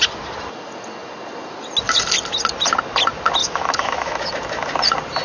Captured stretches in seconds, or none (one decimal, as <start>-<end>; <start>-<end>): 0.0-3.4; 4.3-5.2